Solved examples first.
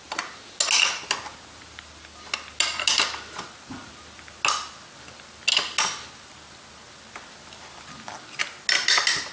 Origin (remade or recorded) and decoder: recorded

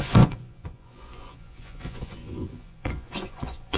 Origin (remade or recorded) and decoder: remade, vocoder, Vocos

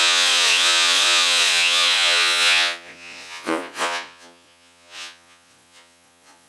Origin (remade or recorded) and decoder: remade, vocoder, Vocos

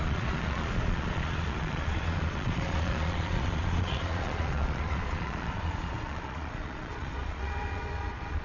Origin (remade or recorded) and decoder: remade, vocoder, Vocos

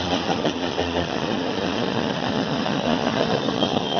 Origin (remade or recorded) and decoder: remade, vocoder, Vocos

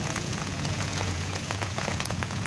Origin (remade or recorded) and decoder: remade, vocoder, Vocos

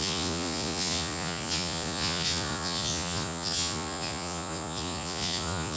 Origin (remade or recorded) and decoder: remade, vocoder, Vocos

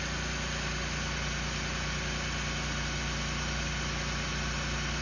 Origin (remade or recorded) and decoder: recorded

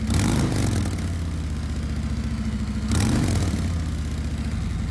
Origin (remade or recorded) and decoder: recorded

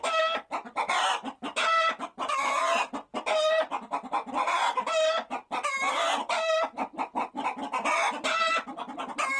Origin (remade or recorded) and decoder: recorded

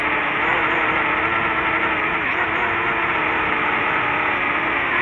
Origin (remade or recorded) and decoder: recorded